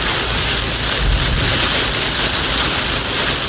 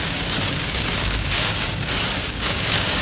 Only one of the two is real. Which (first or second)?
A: first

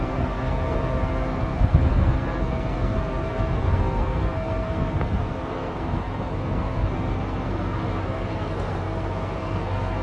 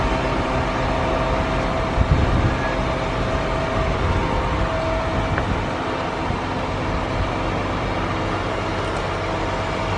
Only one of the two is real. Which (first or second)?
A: second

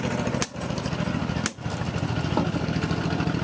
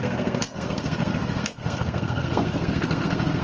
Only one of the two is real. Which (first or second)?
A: first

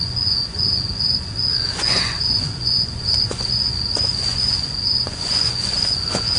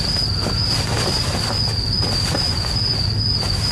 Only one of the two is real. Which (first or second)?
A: second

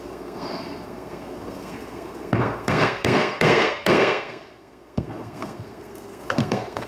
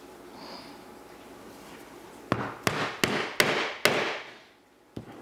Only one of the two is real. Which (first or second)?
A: second